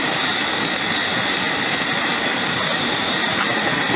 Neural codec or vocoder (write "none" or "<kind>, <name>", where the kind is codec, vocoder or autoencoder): none